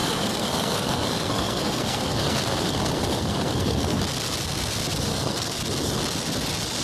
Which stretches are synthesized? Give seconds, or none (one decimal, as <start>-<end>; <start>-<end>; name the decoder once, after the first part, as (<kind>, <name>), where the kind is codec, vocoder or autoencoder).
0.0-4.0 (codec, SNAC); 5.1-5.6